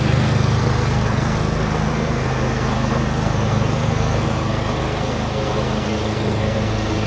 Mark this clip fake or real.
fake